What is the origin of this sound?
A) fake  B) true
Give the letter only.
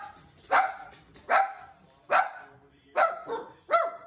A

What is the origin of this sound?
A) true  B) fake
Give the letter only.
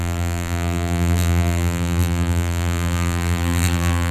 B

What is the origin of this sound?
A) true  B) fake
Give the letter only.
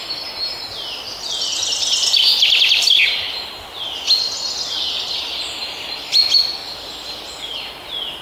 A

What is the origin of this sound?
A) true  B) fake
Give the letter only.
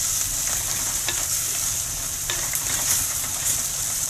B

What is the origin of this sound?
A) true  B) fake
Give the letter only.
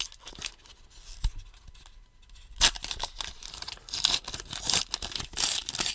A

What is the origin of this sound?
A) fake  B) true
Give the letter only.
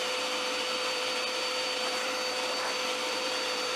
A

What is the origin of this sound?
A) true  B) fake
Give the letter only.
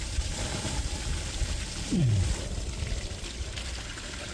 B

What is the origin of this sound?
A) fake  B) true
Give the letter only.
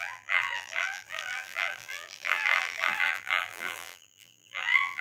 A